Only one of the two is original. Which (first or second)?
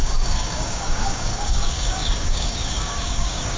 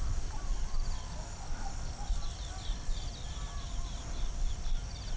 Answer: second